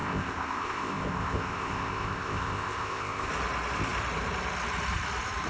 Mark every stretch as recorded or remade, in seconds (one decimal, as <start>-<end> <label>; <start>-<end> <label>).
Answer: 0.0-3.3 remade; 3.3-5.5 recorded